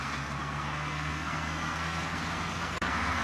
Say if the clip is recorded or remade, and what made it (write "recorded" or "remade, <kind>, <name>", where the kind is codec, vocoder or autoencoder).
remade, codec, SNAC